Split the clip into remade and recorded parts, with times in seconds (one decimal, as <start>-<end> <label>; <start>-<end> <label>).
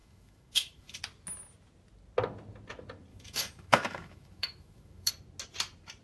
0.0-1.0 remade; 1.0-3.1 recorded; 3.1-5.1 remade; 5.1-6.0 recorded